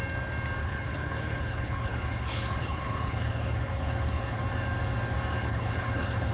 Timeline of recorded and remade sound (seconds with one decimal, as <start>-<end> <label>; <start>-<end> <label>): 0.0-0.6 recorded; 0.6-4.4 remade; 4.4-5.4 recorded; 5.4-6.3 remade